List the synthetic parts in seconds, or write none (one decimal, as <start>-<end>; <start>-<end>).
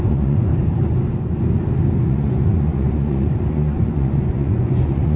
0.0-0.5; 2.0-5.2